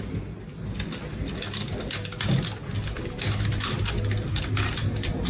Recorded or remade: recorded